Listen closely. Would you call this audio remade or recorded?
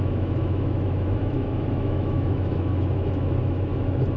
remade